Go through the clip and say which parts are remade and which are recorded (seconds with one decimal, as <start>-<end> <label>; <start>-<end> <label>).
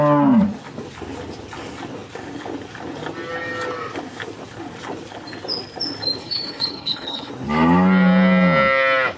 0.0-6.2 recorded; 6.2-7.3 remade; 7.3-9.2 recorded